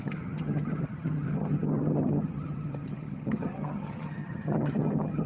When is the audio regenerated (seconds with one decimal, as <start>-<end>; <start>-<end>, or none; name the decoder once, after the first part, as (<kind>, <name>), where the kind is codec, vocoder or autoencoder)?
0.0-5.3 (vocoder, HiFi-GAN)